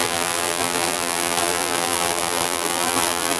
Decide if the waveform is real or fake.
fake